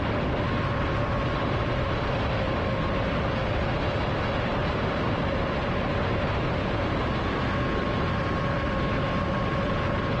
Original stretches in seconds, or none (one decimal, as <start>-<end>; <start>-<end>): 0.0-4.6; 6.4-10.2